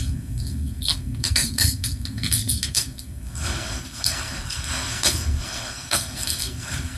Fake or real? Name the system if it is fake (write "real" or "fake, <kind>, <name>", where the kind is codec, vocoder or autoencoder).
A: fake, codec, SNAC